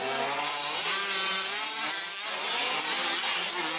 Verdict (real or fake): real